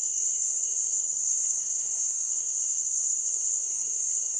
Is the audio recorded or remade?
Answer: remade